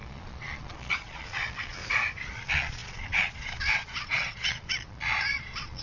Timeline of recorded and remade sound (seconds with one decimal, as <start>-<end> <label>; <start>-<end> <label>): 0.0-1.8 remade; 1.8-2.3 recorded; 2.3-5.8 remade